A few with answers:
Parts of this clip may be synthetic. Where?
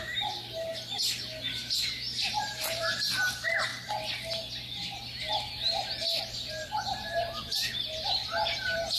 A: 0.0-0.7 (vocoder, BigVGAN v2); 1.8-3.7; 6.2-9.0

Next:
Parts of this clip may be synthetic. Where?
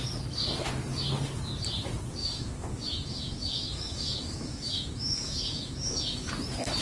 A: 2.2-6.3 (autoencoder, DAC-VAE)